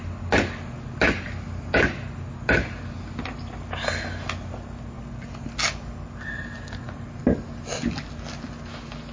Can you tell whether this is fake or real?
real